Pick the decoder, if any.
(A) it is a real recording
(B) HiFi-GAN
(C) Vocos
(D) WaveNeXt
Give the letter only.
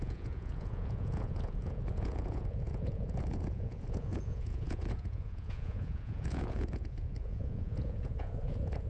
C